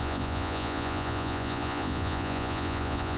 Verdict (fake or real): fake